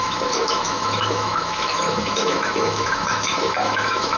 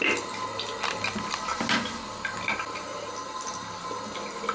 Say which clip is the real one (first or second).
second